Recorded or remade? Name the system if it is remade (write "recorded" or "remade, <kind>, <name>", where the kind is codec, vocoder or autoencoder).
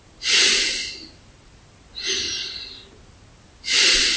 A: recorded